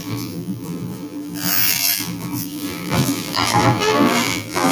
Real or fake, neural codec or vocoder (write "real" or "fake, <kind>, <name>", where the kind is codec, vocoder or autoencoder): fake, vocoder, BigVGAN v2